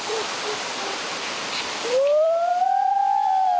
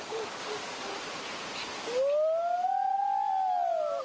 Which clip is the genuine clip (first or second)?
second